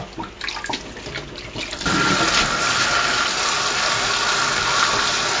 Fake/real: real